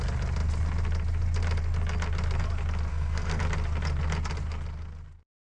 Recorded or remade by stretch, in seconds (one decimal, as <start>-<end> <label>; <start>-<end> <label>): 0.0-2.9 recorded; 2.9-3.4 remade; 3.4-5.4 recorded